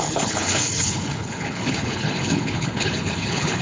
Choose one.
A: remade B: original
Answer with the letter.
A